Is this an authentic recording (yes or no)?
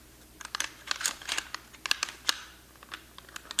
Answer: yes